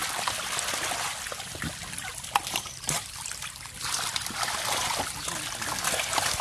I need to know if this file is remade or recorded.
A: remade